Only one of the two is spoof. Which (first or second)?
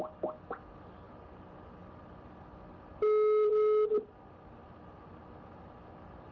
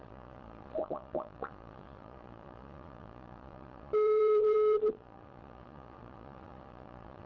second